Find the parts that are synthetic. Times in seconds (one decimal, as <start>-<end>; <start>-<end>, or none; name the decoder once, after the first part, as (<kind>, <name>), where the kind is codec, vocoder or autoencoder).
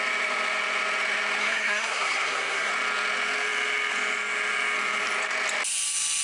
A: 1.4-2.7 (codec, SNAC)